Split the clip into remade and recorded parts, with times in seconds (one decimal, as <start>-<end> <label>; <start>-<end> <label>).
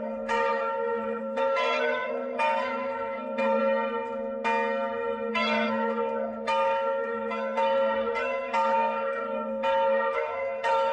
0.0-3.6 remade; 3.6-5.3 recorded; 5.3-10.9 remade